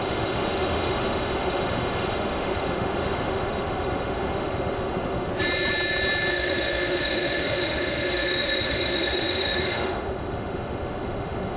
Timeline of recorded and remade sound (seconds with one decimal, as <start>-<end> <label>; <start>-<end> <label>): 0.0-5.3 remade; 5.3-6.3 recorded; 6.3-11.6 remade